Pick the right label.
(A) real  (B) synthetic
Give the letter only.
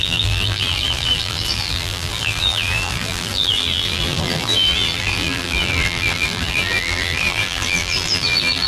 B